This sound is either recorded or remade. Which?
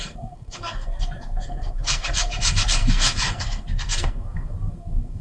remade